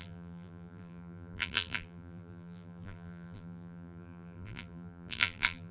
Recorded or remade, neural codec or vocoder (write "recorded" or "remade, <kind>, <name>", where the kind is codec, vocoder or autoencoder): remade, vocoder, BigVGAN v2